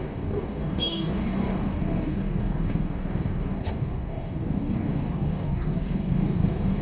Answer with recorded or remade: remade